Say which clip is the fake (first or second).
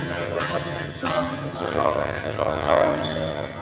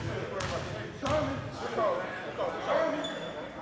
first